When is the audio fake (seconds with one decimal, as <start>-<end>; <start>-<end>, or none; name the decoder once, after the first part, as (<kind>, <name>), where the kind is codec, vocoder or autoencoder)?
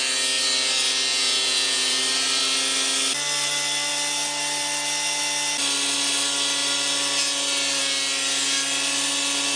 1.1-2.0 (vocoder, Vocos)